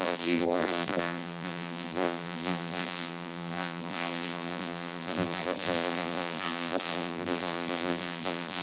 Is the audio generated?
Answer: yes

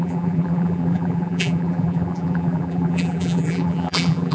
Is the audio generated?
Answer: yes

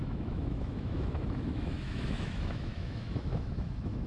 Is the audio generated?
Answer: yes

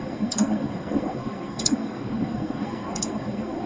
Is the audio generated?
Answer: yes